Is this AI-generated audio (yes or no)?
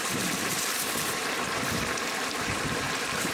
yes